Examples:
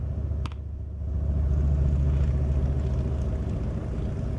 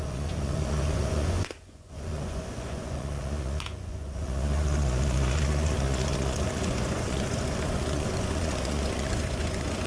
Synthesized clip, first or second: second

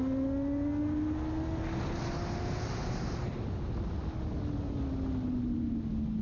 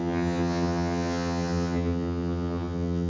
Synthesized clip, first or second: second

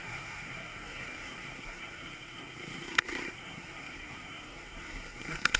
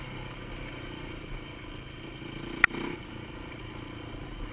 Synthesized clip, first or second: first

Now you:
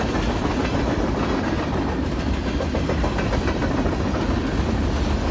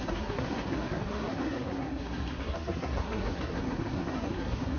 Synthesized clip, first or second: second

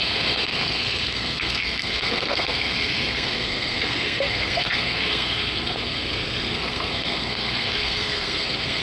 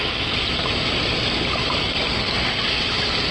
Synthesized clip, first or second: first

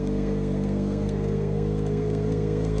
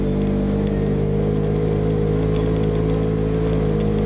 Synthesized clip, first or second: first